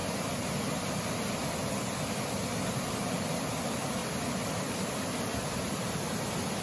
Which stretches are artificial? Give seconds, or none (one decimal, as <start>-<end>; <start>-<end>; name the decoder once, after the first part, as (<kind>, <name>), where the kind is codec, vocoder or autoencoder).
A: 2.2-4.0 (vocoder, BigVGAN v2); 4.6-5.3